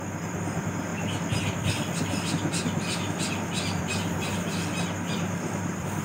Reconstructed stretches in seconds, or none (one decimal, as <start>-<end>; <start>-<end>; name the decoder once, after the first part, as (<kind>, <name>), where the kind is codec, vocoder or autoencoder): none